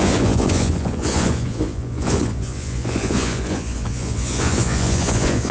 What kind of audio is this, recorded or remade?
remade